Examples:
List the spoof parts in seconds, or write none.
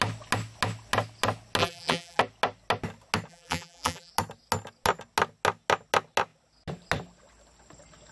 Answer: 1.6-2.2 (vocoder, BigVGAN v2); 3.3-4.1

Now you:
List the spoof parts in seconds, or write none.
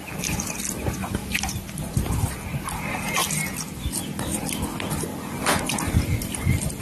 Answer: 1.2-2.8 (vocoder, BigVGAN v2); 5.1-6.8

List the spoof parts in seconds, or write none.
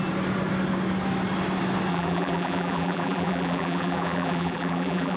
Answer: 1.9-5.2 (vocoder, BigVGAN v2)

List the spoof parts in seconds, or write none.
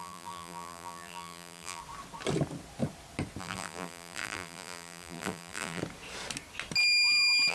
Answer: 0.0-1.8 (vocoder, BigVGAN v2); 3.4-5.8